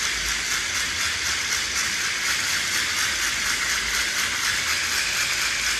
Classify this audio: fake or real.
real